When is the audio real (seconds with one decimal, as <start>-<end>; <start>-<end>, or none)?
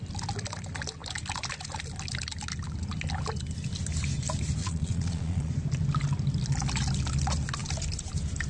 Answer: 0.0-4.6; 5.5-8.5